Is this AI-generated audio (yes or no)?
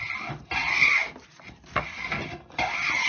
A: no